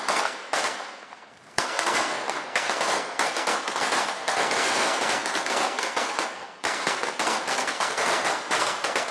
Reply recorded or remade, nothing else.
remade